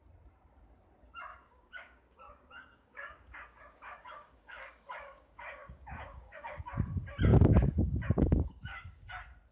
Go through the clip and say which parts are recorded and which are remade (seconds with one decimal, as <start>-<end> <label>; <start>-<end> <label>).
0.0-1.3 recorded; 1.3-6.6 remade; 6.6-7.3 recorded; 7.3-9.1 remade; 9.1-9.5 recorded